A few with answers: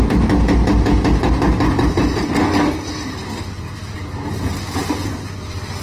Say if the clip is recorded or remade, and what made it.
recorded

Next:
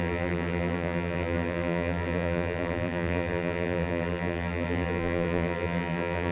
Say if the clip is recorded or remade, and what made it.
remade, vocoder, BigVGAN v2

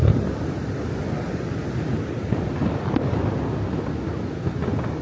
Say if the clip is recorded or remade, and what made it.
recorded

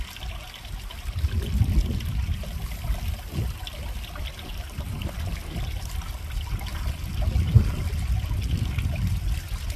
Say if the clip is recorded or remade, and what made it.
recorded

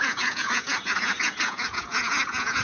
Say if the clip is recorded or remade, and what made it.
remade, vocoder, Vocos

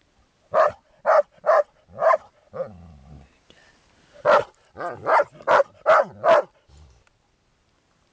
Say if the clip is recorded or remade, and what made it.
recorded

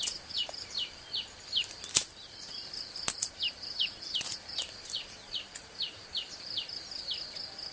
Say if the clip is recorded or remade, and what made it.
remade, vocoder, BigVGAN v2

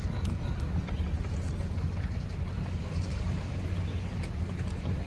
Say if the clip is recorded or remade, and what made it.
recorded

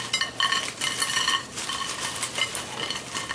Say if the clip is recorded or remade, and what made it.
recorded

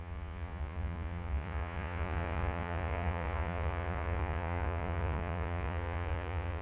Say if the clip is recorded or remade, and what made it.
remade, vocoder, Vocos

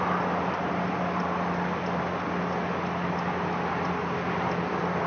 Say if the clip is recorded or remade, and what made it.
recorded